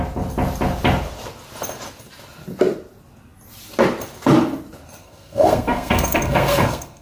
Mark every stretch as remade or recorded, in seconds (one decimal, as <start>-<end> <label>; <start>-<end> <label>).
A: 0.0-5.0 recorded; 5.0-7.0 remade